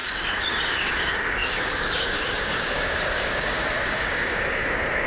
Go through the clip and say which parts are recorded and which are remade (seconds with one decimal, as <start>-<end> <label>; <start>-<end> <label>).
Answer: 0.0-5.1 remade